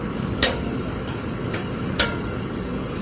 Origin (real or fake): fake